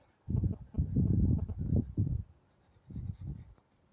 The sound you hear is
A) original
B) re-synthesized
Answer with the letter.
A